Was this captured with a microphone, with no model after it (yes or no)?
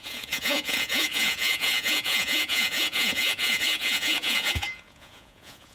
no